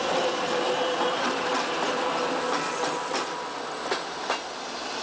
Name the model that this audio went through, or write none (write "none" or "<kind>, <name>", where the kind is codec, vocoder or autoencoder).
none